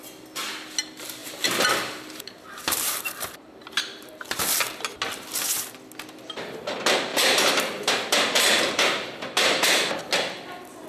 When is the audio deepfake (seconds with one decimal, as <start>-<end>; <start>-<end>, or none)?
1.2-4.4; 7.1-10.0